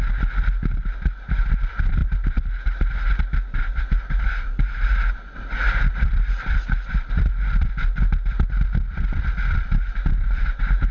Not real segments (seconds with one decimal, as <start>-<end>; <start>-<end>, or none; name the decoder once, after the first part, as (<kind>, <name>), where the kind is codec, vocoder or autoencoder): none